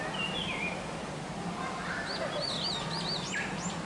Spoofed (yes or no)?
no